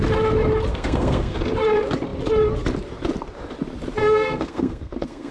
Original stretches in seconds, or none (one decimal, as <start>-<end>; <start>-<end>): 0.0-0.7; 1.4-4.0